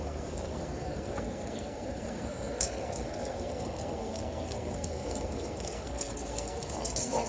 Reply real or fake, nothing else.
fake